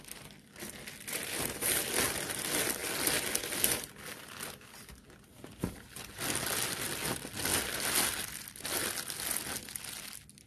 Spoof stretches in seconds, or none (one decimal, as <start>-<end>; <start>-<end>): none